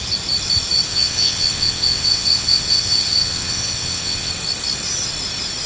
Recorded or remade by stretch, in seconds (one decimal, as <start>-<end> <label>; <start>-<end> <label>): 0.0-0.9 recorded; 0.9-4.3 remade; 4.3-5.7 recorded